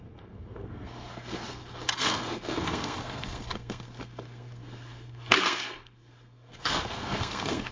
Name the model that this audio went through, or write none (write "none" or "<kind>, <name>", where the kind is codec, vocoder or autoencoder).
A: codec, SNAC